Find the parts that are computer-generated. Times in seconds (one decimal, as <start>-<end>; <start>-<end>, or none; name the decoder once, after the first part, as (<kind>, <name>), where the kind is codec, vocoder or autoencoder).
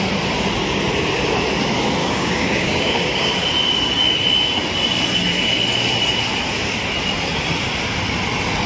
2.0-3.4 (codec, DAC)